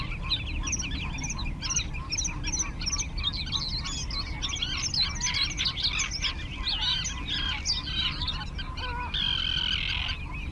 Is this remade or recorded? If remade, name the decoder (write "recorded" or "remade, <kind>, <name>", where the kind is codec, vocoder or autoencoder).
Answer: recorded